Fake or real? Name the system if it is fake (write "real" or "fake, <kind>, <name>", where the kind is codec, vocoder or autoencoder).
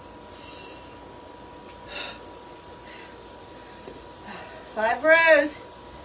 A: real